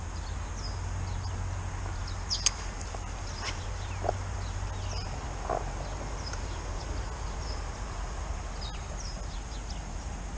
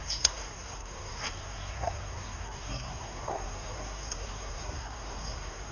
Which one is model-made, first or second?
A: second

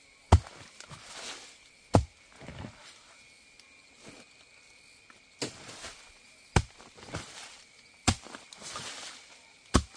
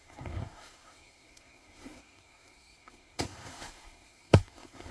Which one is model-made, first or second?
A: second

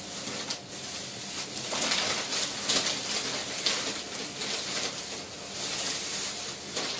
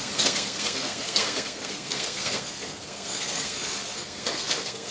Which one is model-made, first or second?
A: second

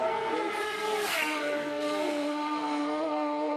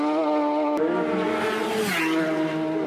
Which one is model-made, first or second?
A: first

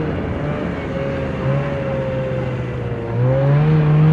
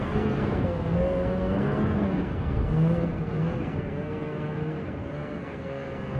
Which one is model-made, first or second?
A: second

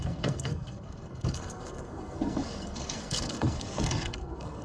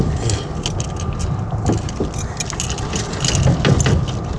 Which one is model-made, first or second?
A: first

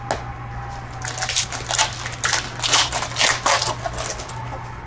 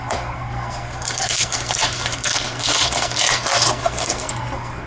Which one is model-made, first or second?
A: second